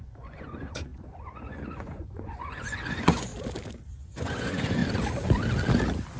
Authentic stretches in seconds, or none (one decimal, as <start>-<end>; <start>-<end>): 3.3-4.0; 4.8-6.2